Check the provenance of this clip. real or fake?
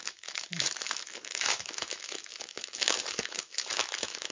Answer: fake